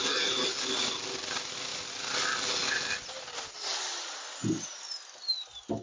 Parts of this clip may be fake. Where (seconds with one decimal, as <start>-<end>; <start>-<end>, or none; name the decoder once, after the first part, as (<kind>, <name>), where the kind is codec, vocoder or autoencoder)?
none